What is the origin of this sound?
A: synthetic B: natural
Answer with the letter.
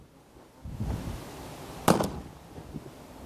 B